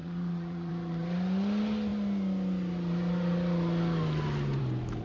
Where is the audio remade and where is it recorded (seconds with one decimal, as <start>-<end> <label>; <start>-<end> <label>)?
0.0-0.7 remade; 0.7-5.0 recorded